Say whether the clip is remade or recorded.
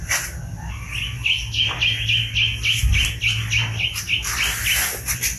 recorded